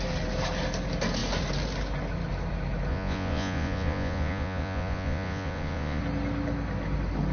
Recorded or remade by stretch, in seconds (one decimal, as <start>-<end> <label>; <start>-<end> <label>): 0.0-2.9 recorded; 2.9-6.0 remade; 6.0-7.3 recorded